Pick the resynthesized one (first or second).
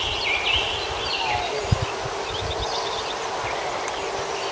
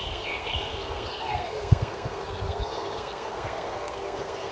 second